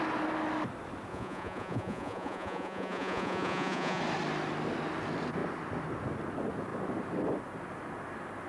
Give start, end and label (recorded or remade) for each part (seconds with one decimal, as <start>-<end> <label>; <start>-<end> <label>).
0.0-1.1 recorded; 1.1-4.0 remade; 4.0-8.5 recorded